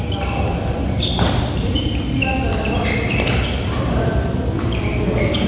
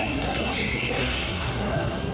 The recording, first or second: first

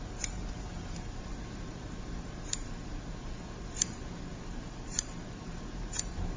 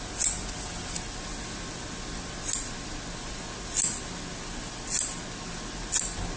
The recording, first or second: second